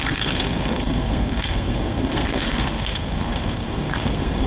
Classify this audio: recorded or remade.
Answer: remade